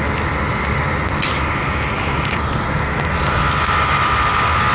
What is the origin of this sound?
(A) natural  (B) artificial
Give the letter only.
A